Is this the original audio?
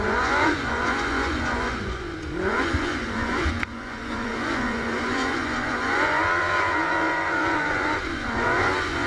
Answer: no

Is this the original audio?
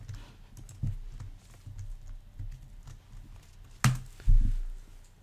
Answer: yes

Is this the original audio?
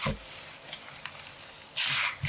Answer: yes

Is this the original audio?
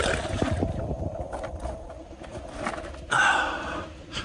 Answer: yes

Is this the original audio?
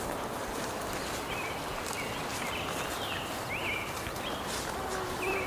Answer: yes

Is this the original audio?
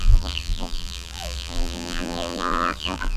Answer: no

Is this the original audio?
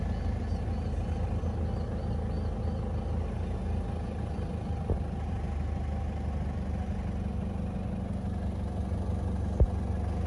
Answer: yes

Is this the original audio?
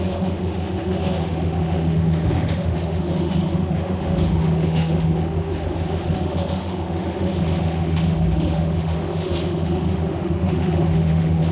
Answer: no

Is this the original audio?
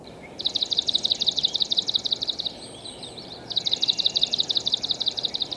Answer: no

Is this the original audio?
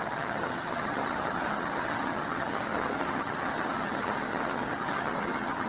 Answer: no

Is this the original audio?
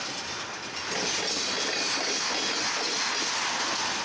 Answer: yes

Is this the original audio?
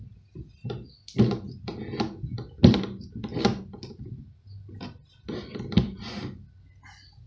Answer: yes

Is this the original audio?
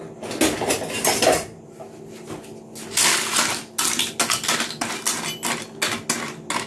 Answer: yes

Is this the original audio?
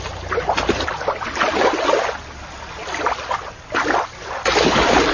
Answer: yes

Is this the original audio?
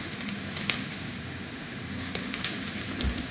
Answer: no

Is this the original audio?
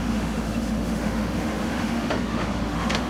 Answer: no